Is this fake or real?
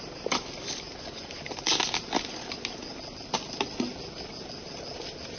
real